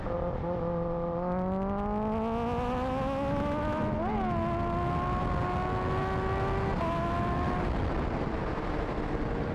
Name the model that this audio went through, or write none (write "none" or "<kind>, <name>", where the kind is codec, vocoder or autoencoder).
none